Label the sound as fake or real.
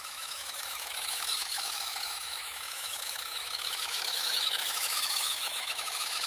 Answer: fake